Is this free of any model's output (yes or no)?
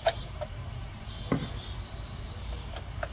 yes